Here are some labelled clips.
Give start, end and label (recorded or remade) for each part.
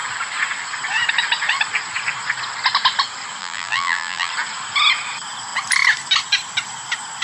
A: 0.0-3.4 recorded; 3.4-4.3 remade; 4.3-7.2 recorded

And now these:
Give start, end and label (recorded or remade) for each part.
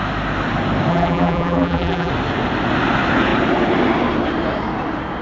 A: 0.0-0.9 recorded; 0.9-2.1 remade; 2.1-5.2 recorded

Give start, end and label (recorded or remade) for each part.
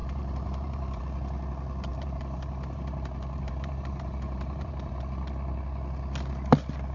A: 0.0-1.0 remade; 1.0-1.9 recorded; 1.9-5.0 remade; 5.0-6.9 recorded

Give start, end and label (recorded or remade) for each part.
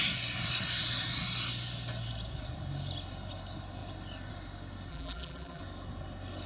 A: 0.0-4.9 recorded; 4.9-5.6 remade; 5.6-6.5 recorded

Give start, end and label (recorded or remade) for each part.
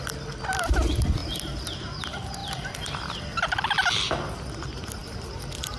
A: 0.0-2.4 recorded; 2.4-3.2 remade; 3.2-5.0 recorded; 5.0-5.8 remade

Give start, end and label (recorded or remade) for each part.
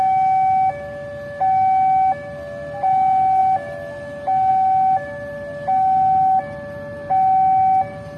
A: 0.0-8.2 recorded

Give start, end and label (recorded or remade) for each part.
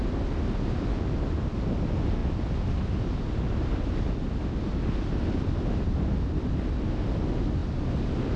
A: 0.0-2.2 recorded; 2.2-2.9 remade; 2.9-8.4 recorded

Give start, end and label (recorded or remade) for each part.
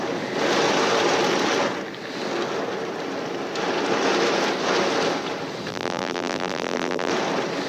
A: 0.0-5.7 recorded; 5.7-7.1 remade; 7.1-7.7 recorded